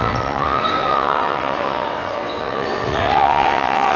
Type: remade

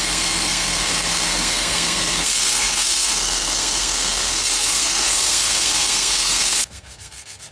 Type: remade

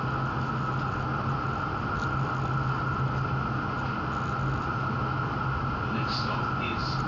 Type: recorded